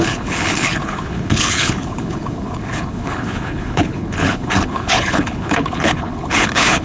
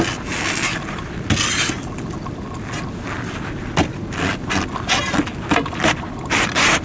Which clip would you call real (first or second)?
second